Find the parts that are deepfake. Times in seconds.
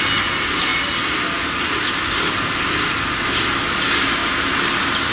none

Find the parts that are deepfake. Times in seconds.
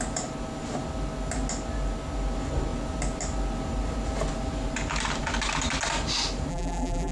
6.5-7.1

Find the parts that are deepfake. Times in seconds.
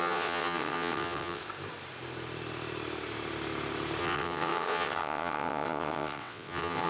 0.0-1.4; 4.0-6.9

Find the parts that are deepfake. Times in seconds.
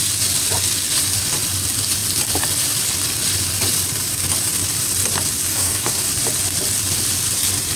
5.5-6.1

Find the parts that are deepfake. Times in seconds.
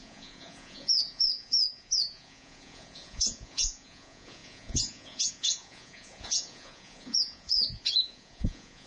0.0-8.9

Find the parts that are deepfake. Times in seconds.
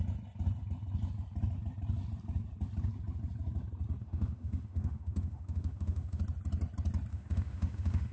4.0-6.2; 7.1-8.1